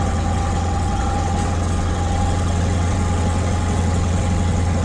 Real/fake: fake